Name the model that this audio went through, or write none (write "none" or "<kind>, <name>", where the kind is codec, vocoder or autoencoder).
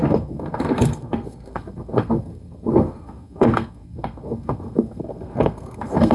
codec, SNAC